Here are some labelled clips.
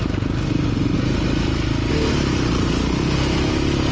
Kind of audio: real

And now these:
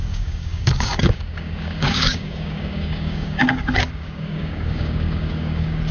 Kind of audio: fake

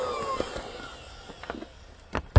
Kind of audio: real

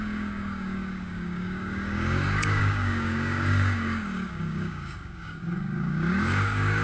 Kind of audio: fake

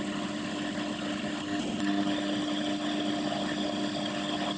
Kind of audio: real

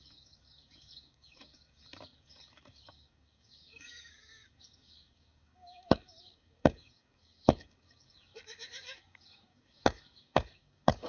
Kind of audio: fake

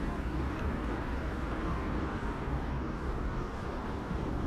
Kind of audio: fake